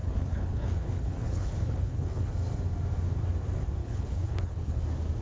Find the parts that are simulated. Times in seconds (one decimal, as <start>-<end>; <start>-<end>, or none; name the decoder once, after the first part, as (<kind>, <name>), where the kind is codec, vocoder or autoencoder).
0.0-2.3 (codec, HILCodec); 3.8-4.8